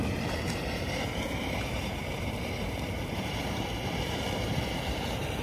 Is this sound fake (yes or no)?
yes